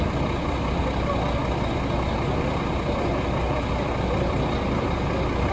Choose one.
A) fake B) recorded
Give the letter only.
B